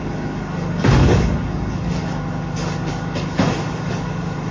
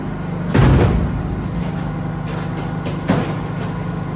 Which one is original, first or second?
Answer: second